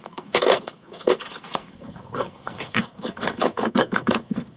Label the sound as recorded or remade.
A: remade